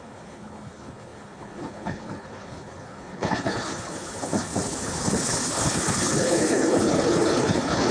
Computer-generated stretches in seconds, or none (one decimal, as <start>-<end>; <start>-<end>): 0.0-7.9